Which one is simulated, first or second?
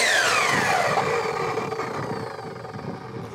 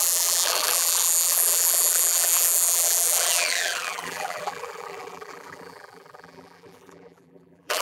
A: second